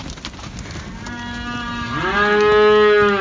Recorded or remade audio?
recorded